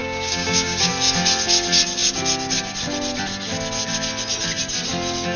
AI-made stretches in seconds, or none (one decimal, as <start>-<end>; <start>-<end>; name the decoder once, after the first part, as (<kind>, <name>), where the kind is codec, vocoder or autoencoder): 0.0-0.9 (codec, DAC)